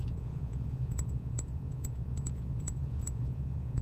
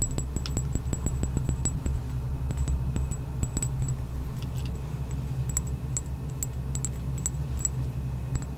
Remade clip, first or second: first